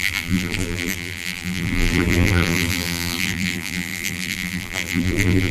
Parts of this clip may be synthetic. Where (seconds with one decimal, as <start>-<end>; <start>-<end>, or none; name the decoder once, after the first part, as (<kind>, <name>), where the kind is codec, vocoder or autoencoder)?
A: 0.0-5.5 (vocoder, BigVGAN v2)